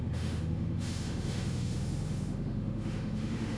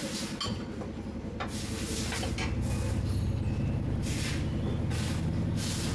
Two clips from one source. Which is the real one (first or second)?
second